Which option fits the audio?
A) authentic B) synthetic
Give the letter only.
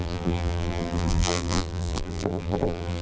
B